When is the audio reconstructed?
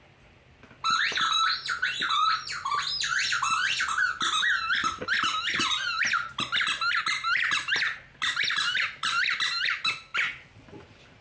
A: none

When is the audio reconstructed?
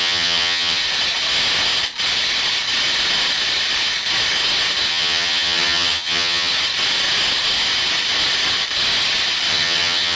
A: 0.0-0.8 (vocoder, HiFi-GAN); 4.9-6.5; 9.5-10.2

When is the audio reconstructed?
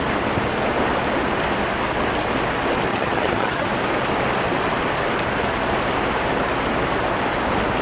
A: 2.9-3.7 (vocoder, HiFi-GAN)